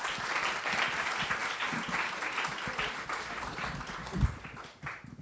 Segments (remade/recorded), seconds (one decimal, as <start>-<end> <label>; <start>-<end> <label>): 0.0-5.2 recorded